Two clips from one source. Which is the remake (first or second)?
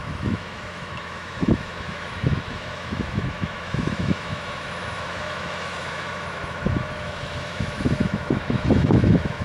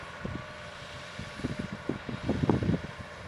first